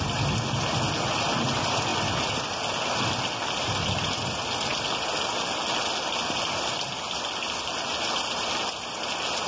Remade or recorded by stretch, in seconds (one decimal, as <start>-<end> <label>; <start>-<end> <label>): 0.0-9.5 recorded